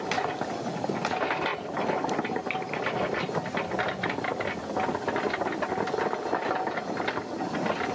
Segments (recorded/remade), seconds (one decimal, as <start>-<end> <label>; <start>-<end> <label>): 0.0-7.9 recorded